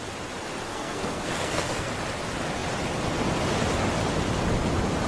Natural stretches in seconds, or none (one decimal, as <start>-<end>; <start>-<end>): 0.0-0.7; 1.9-5.1